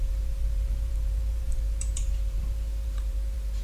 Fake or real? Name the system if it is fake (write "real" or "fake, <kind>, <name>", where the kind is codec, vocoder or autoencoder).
fake, vocoder, BigVGAN v2